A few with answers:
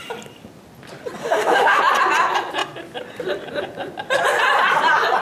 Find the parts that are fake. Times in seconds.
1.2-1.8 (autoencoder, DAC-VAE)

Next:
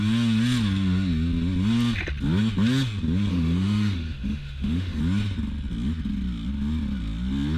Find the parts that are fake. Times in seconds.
3.3-5.0 (autoencoder, DAC-VAE)

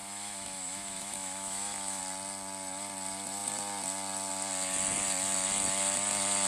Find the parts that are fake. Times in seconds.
0.0-2.0 (autoencoder, DAC-VAE)

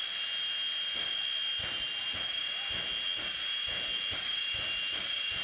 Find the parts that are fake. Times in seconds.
none

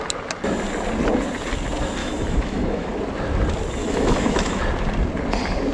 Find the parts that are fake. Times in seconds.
2.0-3.0 (autoencoder, DAC-VAE); 3.8-4.6

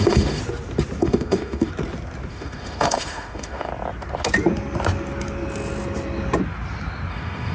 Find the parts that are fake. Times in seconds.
0.0-0.4 (autoencoder, DAC-VAE); 1.0-1.7; 2.3-3.7; 7.1-7.5

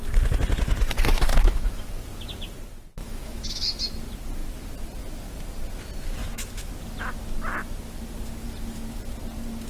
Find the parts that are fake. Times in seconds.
1.3-1.9 (autoencoder, DAC-VAE); 3.0-3.8; 6.2-6.7

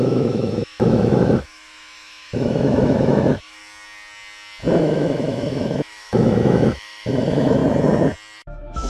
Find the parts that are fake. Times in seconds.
0.0-3.6 (autoencoder, DAC-VAE); 4.8-7.6; 8.4-8.9